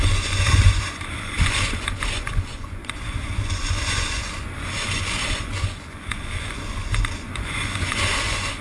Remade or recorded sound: remade